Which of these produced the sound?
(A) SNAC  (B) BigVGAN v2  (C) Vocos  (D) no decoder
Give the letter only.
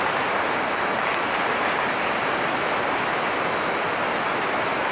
D